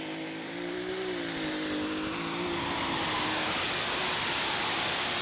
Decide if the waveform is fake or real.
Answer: fake